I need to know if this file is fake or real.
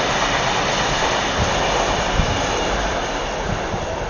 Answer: real